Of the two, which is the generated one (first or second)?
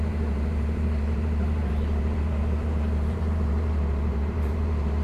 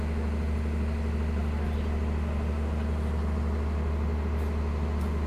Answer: first